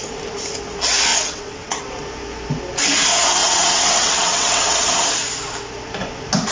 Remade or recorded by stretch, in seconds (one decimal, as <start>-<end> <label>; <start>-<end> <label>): 0.0-1.1 recorded; 1.1-1.9 remade; 1.9-3.4 recorded; 3.4-4.9 remade; 4.9-6.5 recorded